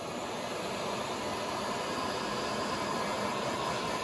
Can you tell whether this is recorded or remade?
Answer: recorded